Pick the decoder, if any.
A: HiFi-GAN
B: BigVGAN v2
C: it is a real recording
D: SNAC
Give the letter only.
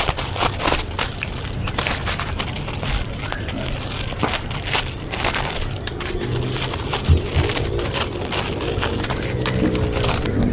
C